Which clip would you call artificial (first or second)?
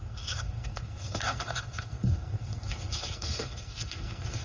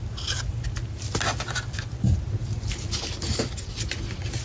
first